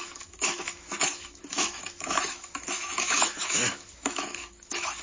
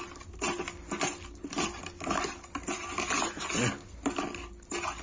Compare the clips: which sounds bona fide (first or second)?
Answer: second